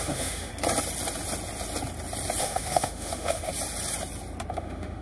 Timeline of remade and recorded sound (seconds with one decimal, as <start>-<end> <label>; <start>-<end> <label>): 0.0-0.5 remade; 0.5-2.4 recorded; 2.4-3.5 remade; 3.5-4.5 recorded; 4.5-5.0 remade